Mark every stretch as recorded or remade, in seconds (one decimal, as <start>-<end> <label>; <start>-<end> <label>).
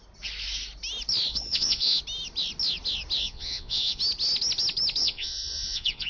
0.0-1.3 recorded; 1.3-2.0 remade; 2.0-3.2 recorded; 3.2-4.0 remade; 4.0-5.0 recorded; 5.0-6.1 remade